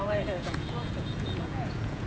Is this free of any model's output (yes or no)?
no